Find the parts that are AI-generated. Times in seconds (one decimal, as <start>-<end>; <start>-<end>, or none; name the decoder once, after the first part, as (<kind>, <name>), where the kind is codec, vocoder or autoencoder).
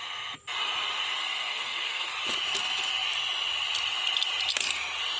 1.2-2.1 (codec, SNAC)